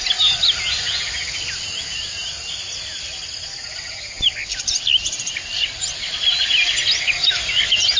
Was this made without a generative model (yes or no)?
yes